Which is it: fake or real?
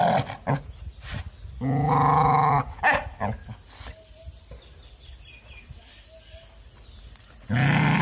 real